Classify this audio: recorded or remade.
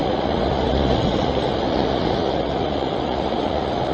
remade